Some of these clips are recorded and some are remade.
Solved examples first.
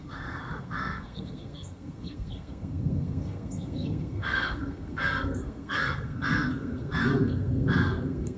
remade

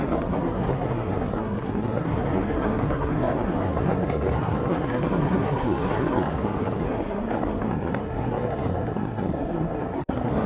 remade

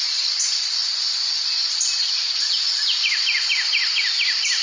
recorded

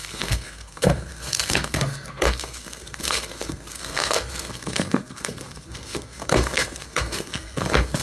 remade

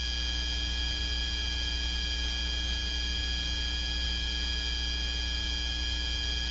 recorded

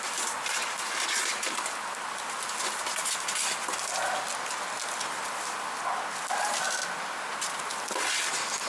recorded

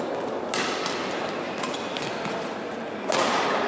recorded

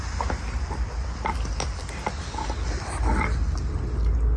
recorded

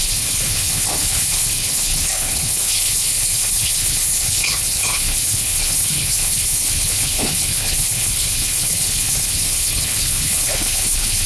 remade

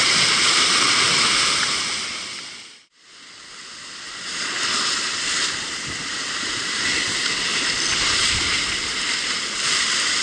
recorded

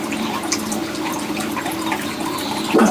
remade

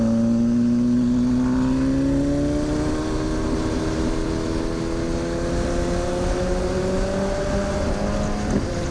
recorded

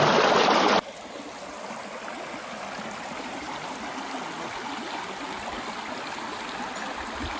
recorded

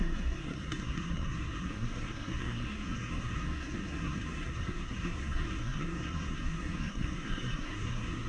remade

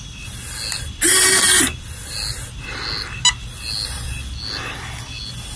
recorded